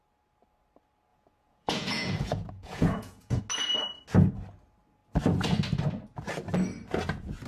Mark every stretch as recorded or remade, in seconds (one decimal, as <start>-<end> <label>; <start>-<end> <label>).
0.0-1.1 recorded; 1.1-3.4 remade; 3.4-7.5 recorded